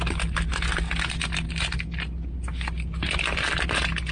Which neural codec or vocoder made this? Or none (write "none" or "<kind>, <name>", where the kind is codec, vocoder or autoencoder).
none